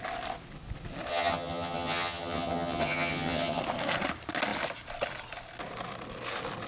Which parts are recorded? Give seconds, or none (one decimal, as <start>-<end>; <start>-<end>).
0.0-1.1; 3.6-6.7